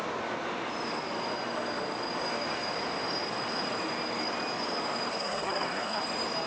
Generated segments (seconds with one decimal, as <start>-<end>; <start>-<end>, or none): 5.1-6.0